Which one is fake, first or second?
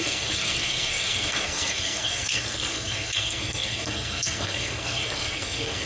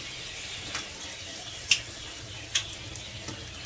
first